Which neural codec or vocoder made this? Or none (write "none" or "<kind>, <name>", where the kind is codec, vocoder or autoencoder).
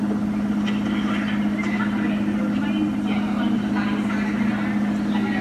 none